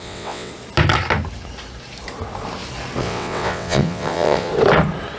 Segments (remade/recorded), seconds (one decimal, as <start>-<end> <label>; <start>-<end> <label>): 0.0-0.5 remade; 0.5-3.0 recorded; 3.0-4.5 remade; 4.5-5.2 recorded